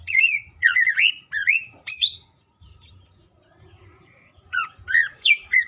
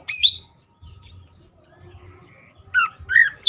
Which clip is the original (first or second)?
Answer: second